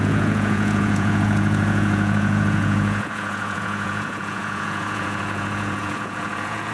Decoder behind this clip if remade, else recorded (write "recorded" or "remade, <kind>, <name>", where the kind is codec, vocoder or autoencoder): remade, vocoder, Vocos